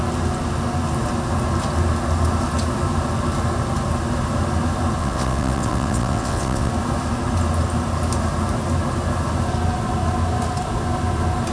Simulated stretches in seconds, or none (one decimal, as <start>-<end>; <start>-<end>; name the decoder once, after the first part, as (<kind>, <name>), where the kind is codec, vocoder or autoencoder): 5.0-6.7 (vocoder, WaveNeXt)